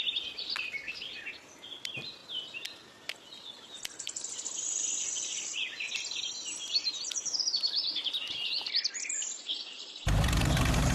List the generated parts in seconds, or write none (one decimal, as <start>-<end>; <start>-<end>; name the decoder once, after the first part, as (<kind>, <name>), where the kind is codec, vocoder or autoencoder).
0.0-2.2 (vocoder, BigVGAN v2); 6.3-10.9